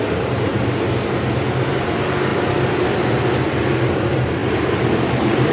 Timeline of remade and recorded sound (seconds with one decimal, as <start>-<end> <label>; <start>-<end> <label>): 0.0-0.5 remade; 0.5-1.7 recorded; 1.7-2.3 remade; 2.3-3.8 recorded; 3.8-5.5 remade